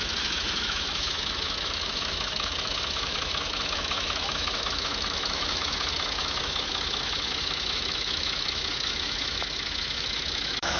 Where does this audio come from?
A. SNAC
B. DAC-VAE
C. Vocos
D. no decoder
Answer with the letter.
B